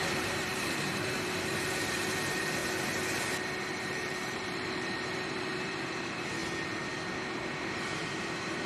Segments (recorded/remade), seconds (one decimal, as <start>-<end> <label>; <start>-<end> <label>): 0.0-2.6 remade; 2.6-3.8 recorded; 3.8-6.4 remade; 6.4-7.4 recorded; 7.4-8.7 remade